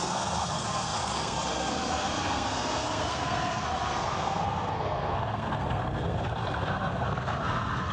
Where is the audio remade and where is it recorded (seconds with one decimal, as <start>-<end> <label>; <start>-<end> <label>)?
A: 0.0-7.9 remade